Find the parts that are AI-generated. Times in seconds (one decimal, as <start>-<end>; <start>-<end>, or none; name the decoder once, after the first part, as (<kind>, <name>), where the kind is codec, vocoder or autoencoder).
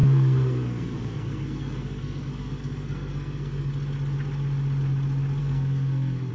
0.0-3.7 (codec, SNAC); 5.4-6.3